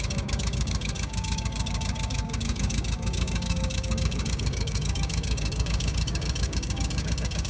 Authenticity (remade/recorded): remade